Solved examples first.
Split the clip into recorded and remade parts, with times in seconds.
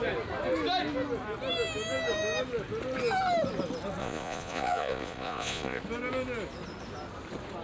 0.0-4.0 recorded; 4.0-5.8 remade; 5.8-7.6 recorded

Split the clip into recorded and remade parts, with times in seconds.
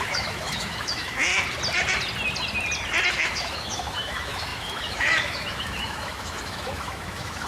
0.0-1.3 remade; 1.3-3.1 recorded; 3.1-7.5 remade